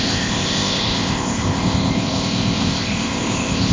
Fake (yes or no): yes